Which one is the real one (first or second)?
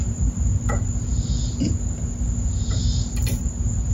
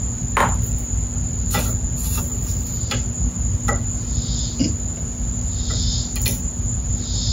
second